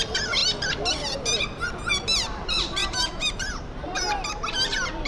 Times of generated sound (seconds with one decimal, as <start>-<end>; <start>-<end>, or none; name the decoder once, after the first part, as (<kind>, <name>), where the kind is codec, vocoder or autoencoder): 0.0-0.4 (vocoder, BigVGAN v2); 0.9-5.1